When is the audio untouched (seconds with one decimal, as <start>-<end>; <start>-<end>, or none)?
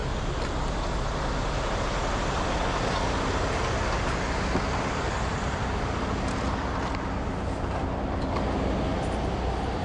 0.0-9.8